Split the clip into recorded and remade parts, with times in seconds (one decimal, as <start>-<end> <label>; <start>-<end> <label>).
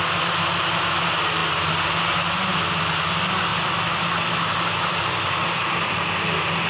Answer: 0.0-6.7 recorded